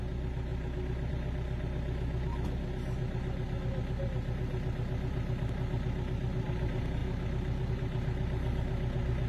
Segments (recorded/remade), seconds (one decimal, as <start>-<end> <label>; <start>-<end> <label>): 0.0-9.3 recorded